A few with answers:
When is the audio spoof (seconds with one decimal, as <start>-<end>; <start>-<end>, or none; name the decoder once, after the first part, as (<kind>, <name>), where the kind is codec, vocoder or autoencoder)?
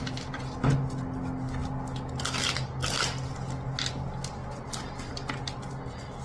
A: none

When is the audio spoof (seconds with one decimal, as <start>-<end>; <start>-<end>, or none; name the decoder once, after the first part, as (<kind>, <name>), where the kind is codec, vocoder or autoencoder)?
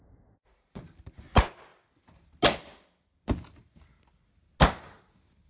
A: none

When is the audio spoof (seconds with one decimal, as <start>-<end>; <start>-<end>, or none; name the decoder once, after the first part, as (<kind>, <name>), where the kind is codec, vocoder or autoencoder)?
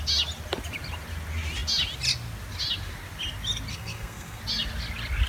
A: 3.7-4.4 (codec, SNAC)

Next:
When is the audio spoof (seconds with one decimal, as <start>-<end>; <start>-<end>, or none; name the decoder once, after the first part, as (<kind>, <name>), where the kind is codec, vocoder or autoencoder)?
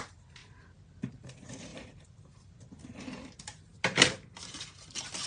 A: 1.7-3.0 (vocoder, BigVGAN v2)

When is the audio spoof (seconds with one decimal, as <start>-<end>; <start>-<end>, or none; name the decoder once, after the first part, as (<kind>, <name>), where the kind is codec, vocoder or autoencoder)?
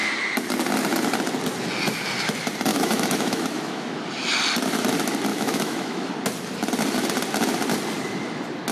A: 2.7-4.0 (autoencoder, DAC-VAE); 5.3-6.1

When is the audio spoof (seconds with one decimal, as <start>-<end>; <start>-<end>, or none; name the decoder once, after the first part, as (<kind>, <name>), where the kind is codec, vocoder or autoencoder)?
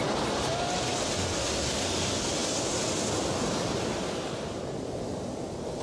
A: 0.0-2.4 (vocoder, BigVGAN v2); 3.1-5.8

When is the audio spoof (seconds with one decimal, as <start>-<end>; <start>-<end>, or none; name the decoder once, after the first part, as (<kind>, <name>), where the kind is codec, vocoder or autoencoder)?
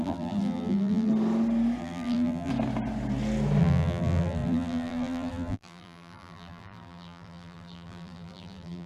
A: 0.0-1.1 (vocoder, BigVGAN v2); 1.8-2.5; 3.6-8.9